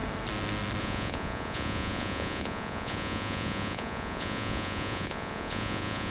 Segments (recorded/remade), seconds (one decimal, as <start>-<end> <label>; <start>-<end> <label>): 0.0-0.8 recorded; 0.8-6.1 remade